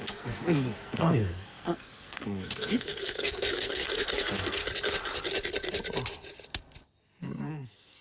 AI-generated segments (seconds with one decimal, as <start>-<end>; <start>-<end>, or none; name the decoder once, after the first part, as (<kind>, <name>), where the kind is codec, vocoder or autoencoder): 0.0-4.6 (codec, SNAC); 7.2-8.0